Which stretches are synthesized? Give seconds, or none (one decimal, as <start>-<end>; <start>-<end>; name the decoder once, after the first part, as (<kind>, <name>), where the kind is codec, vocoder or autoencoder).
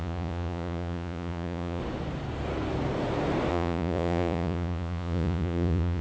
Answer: 0.0-1.8 (vocoder, Vocos); 3.5-6.0